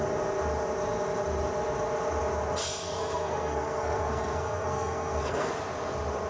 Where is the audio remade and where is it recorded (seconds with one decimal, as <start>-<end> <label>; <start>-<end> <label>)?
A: 0.0-2.6 recorded; 2.6-5.5 remade; 5.5-6.3 recorded